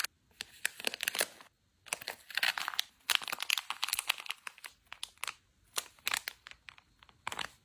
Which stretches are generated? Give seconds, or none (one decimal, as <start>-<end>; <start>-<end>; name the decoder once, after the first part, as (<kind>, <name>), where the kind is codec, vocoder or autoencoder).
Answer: none